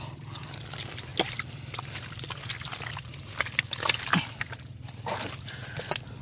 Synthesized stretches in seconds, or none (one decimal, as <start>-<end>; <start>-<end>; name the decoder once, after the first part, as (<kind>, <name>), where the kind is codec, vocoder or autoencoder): none